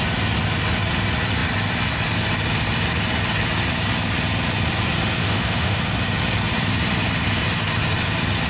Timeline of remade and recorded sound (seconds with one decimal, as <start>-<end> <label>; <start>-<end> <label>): 0.0-5.2 recorded; 5.2-5.8 remade; 5.8-8.5 recorded